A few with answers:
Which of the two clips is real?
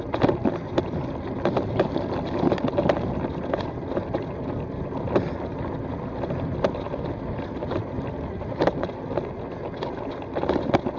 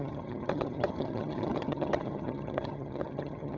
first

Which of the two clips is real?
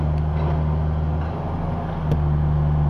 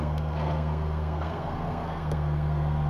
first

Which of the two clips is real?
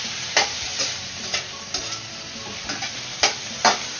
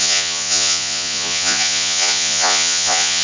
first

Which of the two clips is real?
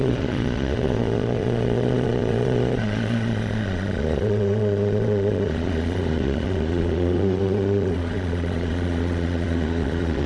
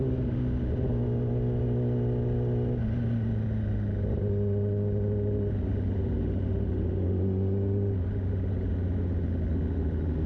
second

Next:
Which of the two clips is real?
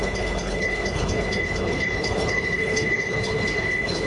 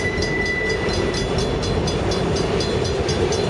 second